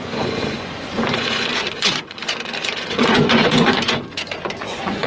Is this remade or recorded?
remade